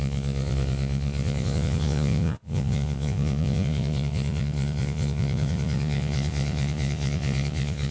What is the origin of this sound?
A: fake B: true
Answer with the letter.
A